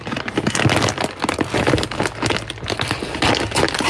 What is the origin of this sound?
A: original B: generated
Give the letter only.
A